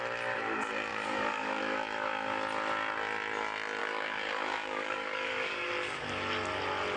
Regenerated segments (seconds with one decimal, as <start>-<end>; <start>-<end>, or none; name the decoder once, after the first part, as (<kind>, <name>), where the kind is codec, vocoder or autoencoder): 0.9-1.6 (codec, DAC); 3.8-5.7